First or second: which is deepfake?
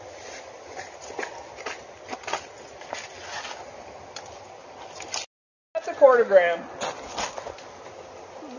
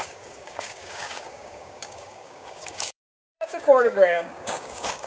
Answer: second